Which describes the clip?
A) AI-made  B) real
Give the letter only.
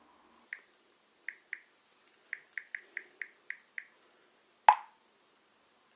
B